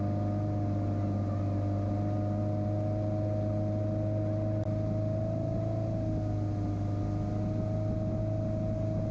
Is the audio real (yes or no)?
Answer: yes